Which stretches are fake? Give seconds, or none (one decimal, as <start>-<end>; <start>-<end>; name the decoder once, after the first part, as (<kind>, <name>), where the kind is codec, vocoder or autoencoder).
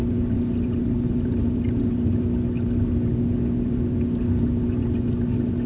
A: none